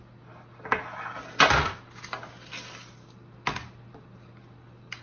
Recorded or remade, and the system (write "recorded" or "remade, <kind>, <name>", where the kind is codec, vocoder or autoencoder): recorded